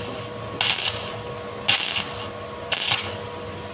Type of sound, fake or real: real